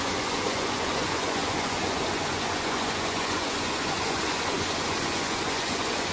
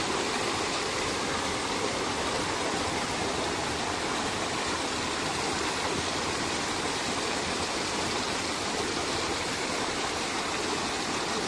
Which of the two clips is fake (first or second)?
first